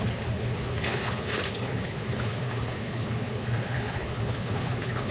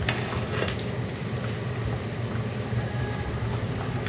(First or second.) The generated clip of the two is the first